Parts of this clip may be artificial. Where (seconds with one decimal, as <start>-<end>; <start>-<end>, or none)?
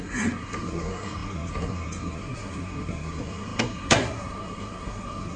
0.0-5.4